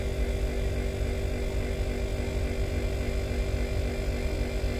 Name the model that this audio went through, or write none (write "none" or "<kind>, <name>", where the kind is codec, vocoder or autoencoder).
none